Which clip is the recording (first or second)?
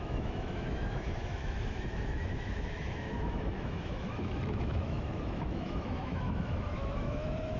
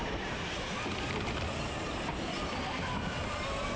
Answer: second